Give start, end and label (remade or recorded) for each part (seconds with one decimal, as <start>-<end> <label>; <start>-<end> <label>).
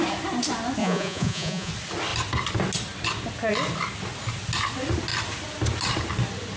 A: 0.0-0.8 recorded; 0.8-1.7 remade; 1.7-6.6 recorded